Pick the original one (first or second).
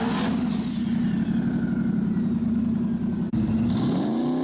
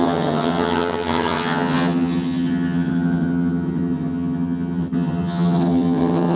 first